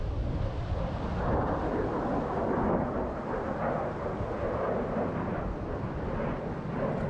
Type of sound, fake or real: real